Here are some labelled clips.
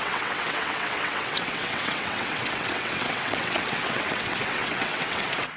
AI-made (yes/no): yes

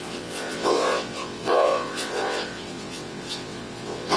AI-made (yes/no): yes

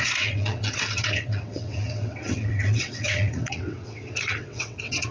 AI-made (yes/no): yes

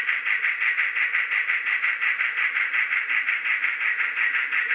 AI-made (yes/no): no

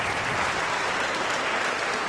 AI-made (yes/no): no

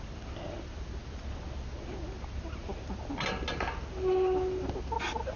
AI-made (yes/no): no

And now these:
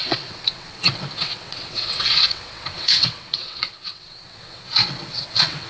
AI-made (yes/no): yes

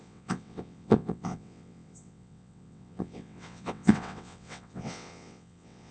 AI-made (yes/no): yes